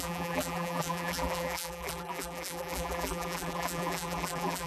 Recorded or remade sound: remade